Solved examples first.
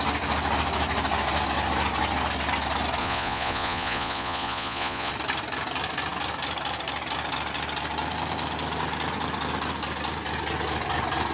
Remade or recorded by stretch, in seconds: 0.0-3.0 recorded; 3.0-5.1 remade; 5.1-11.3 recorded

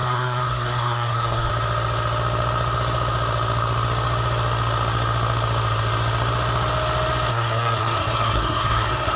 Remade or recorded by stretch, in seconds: 0.0-1.5 remade; 1.5-7.3 recorded; 7.3-9.2 remade

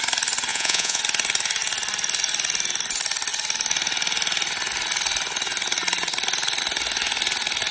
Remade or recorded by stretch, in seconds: 0.0-0.5 recorded; 0.5-1.0 remade; 1.0-7.7 recorded

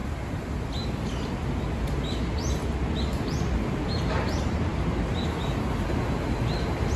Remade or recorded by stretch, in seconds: 0.0-7.0 recorded

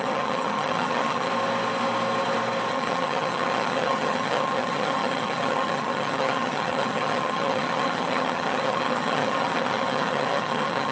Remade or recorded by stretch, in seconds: 0.0-1.3 remade; 1.3-2.7 recorded; 2.7-10.9 remade

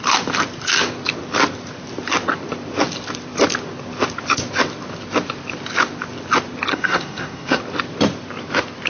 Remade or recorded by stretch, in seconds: 0.0-6.7 recorded; 6.7-7.6 remade; 7.6-8.9 recorded

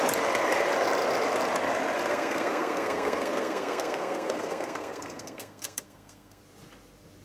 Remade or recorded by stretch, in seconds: 0.0-2.1 recorded; 2.1-6.4 remade; 6.4-7.2 recorded

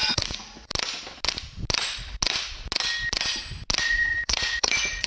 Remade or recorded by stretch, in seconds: 0.0-0.7 remade; 0.7-3.8 recorded; 3.8-5.1 remade